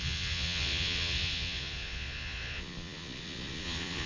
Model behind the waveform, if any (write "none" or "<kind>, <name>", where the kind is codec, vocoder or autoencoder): vocoder, Vocos